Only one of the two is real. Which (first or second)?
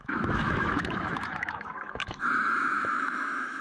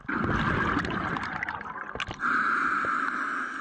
second